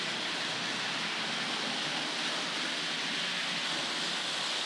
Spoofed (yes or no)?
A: no